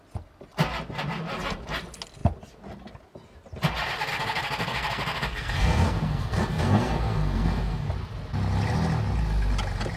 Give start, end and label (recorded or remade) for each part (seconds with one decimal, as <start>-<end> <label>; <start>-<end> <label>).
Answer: 0.0-4.1 recorded; 4.1-7.9 remade; 7.9-10.0 recorded